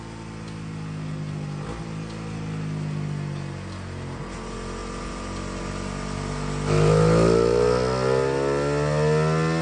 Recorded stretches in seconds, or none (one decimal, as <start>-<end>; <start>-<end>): 0.0-9.6